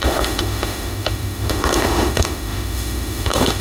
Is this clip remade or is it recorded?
remade